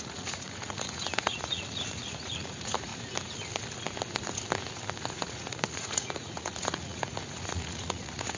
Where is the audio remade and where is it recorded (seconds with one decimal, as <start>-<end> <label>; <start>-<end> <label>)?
0.0-2.9 remade; 2.9-5.1 recorded; 5.1-8.4 remade